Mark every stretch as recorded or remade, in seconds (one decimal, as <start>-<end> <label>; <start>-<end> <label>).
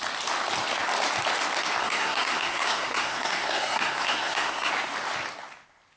0.0-1.8 recorded; 1.8-4.7 remade; 4.7-6.0 recorded